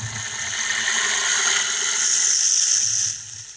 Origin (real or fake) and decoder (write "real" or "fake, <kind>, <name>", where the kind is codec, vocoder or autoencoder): real